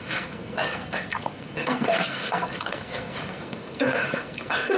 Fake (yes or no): yes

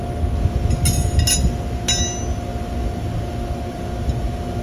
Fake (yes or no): no